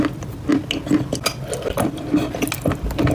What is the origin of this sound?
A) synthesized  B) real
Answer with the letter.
B